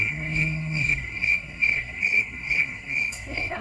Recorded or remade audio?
remade